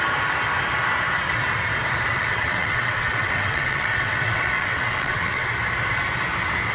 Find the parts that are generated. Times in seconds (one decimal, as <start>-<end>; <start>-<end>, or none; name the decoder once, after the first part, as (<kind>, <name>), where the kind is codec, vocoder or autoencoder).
2.1-5.5 (vocoder, WaveNeXt)